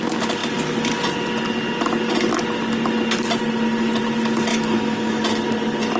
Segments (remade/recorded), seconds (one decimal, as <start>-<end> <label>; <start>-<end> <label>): 0.0-4.5 recorded; 4.5-5.5 remade; 5.5-6.0 recorded